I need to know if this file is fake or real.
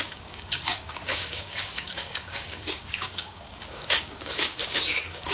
fake